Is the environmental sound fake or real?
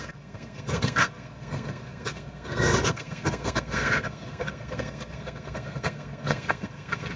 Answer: fake